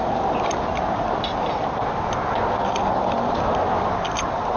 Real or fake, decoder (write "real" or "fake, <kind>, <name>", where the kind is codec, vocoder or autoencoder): real